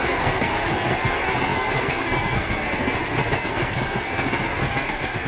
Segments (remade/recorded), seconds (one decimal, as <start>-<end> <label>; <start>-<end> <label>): 0.0-5.3 remade